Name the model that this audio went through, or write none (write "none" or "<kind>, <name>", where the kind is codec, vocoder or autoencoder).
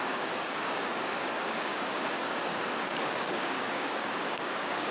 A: codec, DAC